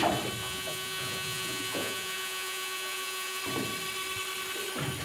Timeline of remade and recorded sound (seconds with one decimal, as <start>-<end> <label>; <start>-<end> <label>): 0.0-0.4 recorded; 0.4-3.4 remade; 3.4-5.0 recorded